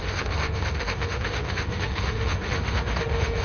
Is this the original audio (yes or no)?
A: no